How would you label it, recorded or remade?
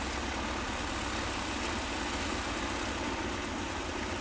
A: recorded